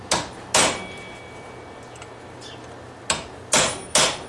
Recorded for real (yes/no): yes